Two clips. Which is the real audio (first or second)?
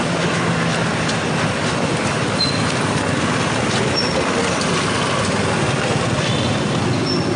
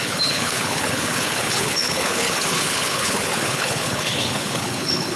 first